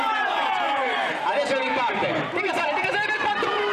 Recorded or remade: remade